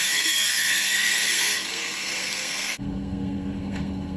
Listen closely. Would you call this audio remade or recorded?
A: remade